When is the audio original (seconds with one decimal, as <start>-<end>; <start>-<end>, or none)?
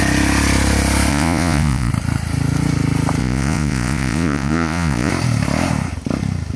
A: 0.0-1.1; 1.9-3.2; 5.1-6.6